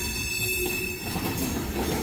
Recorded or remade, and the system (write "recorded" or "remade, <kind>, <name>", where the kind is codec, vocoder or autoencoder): recorded